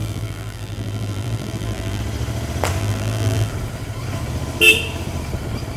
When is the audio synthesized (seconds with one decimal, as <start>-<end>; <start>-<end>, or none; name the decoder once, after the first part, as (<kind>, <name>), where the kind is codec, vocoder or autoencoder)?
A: 0.0-2.0 (vocoder, BigVGAN v2); 2.8-3.5